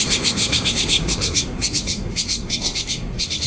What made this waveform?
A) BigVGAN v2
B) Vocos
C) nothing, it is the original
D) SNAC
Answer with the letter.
D